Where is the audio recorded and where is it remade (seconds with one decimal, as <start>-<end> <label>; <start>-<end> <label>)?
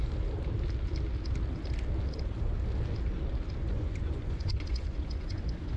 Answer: 0.0-3.6 recorded; 3.6-5.8 remade